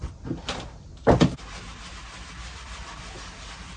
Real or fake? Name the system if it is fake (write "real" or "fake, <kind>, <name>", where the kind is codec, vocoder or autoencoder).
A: real